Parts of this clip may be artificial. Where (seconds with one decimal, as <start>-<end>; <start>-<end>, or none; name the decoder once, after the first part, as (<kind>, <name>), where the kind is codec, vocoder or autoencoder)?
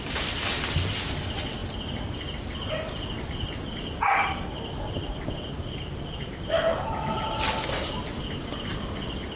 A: none